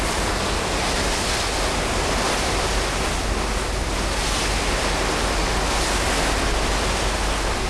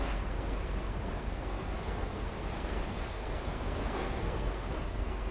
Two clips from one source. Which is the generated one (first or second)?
second